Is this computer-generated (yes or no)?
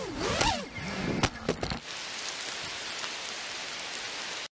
no